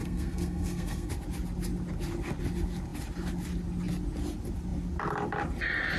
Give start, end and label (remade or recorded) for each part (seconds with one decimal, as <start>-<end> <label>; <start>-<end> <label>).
0.0-1.1 remade; 1.1-6.0 recorded